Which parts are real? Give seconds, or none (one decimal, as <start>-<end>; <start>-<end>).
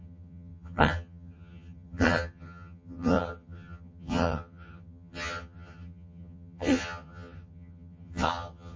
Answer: none